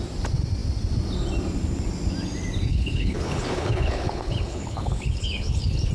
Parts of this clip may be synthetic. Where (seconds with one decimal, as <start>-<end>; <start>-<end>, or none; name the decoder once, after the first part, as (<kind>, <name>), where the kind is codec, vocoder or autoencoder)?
2.7-5.9 (codec, HILCodec)